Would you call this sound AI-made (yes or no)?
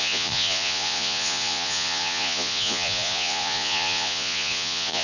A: yes